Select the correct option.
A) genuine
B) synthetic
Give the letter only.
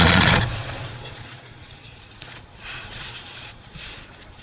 B